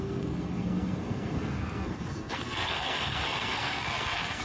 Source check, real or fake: fake